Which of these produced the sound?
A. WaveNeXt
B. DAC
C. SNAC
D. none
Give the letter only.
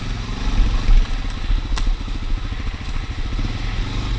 D